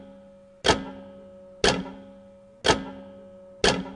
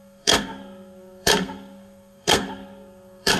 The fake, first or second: second